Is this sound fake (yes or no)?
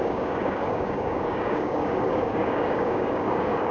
yes